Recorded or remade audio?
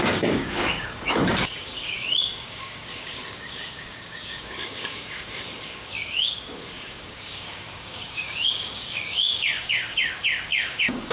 remade